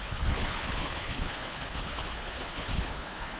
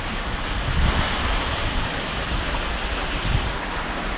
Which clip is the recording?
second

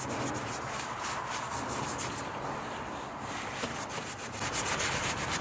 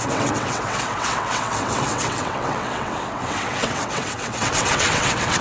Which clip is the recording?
first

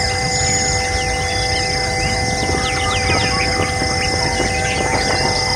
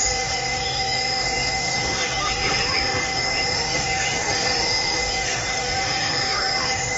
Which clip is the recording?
first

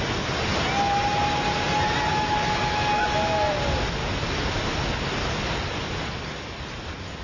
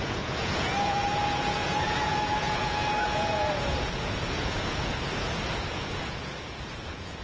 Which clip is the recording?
first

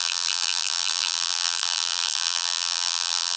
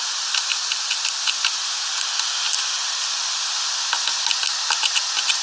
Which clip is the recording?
second